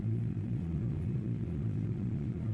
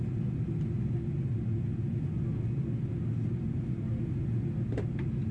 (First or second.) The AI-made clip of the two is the first